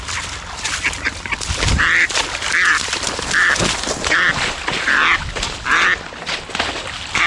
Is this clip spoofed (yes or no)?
no